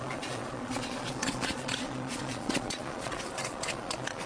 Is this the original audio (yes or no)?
no